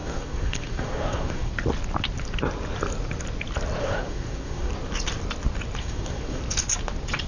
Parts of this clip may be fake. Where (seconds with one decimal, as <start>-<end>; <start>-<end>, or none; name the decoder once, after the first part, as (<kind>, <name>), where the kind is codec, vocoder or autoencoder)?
0.0-1.5 (codec, SNAC); 3.8-4.7; 5.8-6.4